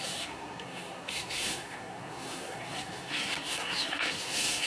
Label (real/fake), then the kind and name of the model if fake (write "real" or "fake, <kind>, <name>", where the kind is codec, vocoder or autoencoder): fake, codec, SNAC